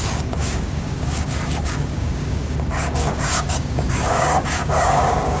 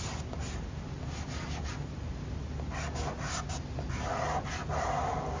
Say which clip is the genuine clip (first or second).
second